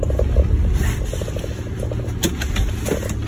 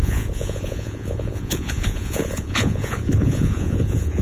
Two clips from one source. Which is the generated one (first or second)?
second